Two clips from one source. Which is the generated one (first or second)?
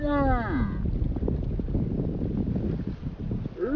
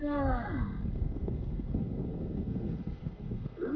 second